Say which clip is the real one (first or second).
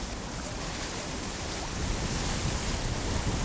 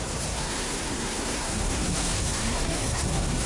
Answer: first